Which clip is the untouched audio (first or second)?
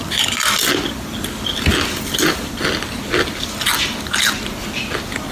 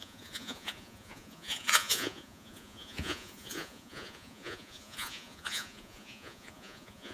first